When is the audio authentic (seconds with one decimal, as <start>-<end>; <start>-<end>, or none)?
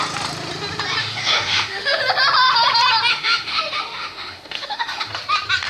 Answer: 0.0-1.0; 2.0-3.1; 5.1-5.7